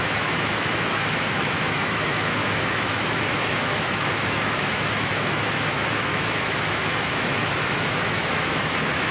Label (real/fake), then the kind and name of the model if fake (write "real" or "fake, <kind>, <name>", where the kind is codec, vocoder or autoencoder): fake, autoencoder, DAC-VAE